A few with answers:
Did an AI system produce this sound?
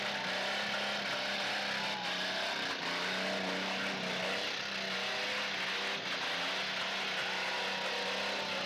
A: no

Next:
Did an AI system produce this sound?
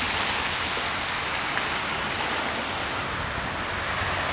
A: no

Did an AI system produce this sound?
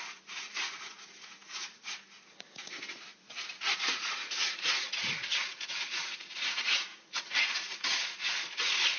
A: yes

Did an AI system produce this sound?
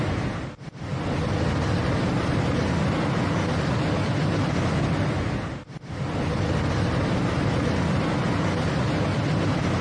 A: no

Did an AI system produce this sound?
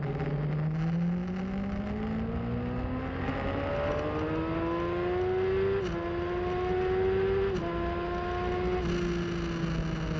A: no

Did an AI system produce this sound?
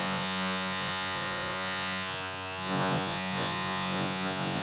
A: yes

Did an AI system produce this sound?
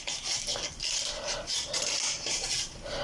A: no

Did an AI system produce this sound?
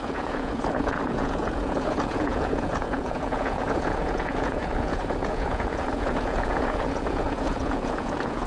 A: yes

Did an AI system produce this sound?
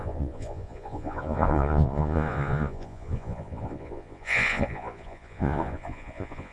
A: yes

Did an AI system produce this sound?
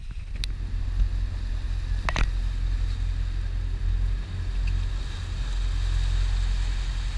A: no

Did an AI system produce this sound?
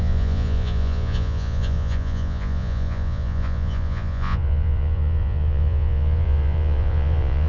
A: yes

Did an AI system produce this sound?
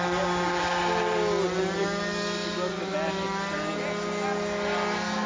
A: no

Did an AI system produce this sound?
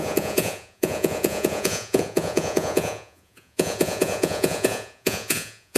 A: yes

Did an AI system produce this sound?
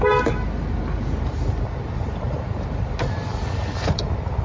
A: no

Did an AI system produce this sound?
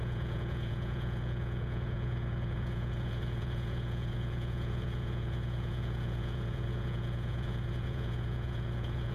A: yes